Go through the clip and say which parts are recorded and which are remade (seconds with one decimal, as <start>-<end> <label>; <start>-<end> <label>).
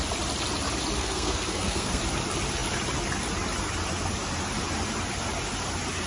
0.0-1.0 recorded; 1.0-2.0 remade; 2.0-6.1 recorded